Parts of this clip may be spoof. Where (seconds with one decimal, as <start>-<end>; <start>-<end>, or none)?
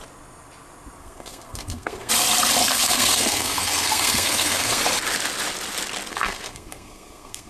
1.0-2.1; 2.6-4.8; 6.1-7.5